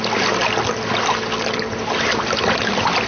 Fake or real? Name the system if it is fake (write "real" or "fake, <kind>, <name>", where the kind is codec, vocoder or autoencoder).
real